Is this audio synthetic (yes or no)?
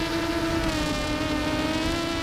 no